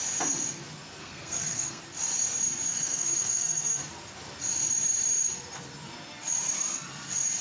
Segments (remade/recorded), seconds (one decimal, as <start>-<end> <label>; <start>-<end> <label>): 0.0-1.0 recorded; 1.0-1.8 remade; 1.8-2.7 recorded; 2.7-3.8 remade; 3.8-7.4 recorded